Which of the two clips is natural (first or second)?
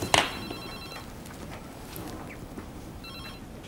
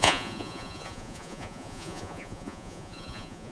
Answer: first